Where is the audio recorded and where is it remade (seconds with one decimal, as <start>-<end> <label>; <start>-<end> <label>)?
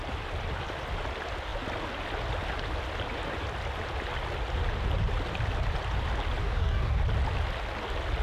0.0-6.4 recorded; 6.4-7.0 remade; 7.0-8.2 recorded